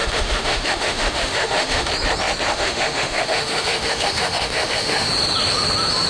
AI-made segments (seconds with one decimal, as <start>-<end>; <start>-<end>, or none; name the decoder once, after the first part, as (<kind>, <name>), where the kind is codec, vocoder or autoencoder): 0.0-1.9 (autoencoder, DAC-VAE); 2.5-5.1